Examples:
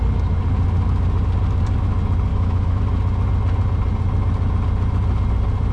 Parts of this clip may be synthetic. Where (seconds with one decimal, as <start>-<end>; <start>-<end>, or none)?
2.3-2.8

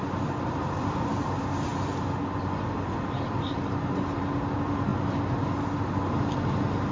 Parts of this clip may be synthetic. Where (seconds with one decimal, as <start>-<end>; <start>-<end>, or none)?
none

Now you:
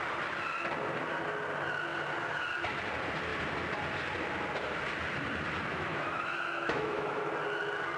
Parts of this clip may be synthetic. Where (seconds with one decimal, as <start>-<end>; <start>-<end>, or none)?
5.7-7.3

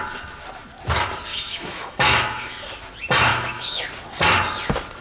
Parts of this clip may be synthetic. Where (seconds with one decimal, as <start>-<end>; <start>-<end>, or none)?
1.3-2.6; 3.3-3.8

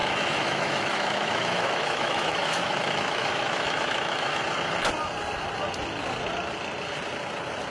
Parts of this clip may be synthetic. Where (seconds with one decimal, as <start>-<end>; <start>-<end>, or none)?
0.0-4.4

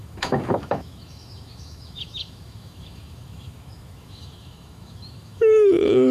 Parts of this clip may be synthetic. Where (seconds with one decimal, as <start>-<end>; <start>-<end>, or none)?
0.0-6.1

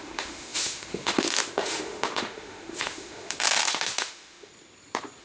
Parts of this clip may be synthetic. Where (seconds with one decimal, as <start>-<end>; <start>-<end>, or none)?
0.0-4.5